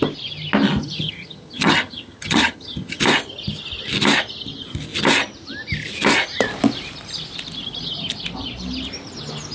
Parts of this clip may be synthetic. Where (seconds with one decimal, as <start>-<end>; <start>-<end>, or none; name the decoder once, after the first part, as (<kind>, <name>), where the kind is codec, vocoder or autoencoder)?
0.8-3.0 (vocoder, HiFi-GAN)